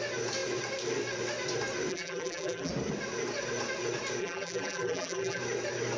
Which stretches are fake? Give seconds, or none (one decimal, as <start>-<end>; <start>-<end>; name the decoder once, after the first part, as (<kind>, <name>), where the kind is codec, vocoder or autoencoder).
1.9-2.7 (vocoder, BigVGAN v2); 4.2-5.4